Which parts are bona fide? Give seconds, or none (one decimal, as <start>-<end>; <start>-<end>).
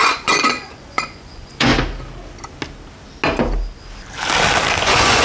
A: 1.7-4.8